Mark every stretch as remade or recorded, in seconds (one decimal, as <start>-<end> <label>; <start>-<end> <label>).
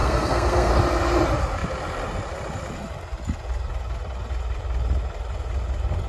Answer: 0.0-0.7 remade; 0.7-6.1 recorded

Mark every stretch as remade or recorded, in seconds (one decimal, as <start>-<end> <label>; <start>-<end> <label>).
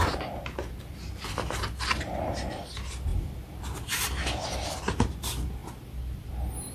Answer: 0.0-3.1 recorded; 3.1-3.6 remade; 3.6-5.6 recorded; 5.6-6.3 remade; 6.3-6.7 recorded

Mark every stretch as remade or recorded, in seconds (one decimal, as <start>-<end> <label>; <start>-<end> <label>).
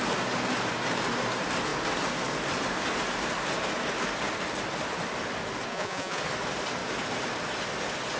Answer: 0.0-5.7 recorded; 5.7-6.2 remade; 6.2-8.2 recorded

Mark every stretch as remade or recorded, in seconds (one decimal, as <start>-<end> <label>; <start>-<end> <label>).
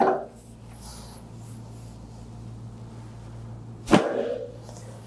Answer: 0.0-5.1 recorded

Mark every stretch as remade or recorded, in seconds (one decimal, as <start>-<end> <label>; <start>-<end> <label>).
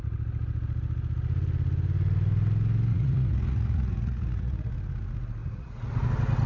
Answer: 0.0-2.9 recorded; 2.9-4.7 remade; 4.7-5.4 recorded; 5.4-6.1 remade; 6.1-6.5 recorded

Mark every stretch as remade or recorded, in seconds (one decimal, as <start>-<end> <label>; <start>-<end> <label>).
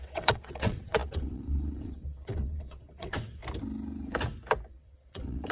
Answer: 0.0-3.4 remade; 3.4-4.7 recorded; 4.7-5.5 remade